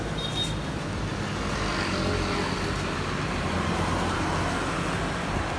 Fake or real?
real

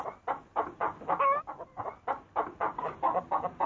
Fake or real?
real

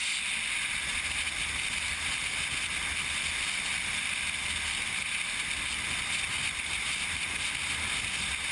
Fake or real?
real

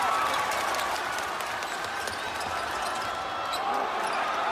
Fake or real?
real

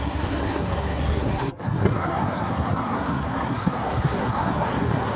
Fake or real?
fake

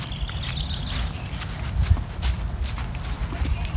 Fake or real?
real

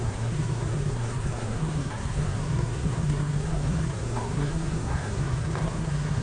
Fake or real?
fake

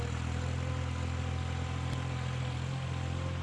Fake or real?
real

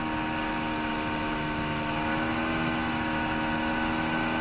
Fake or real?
real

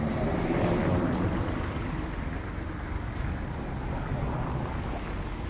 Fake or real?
real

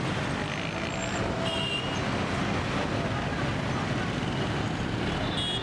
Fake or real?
real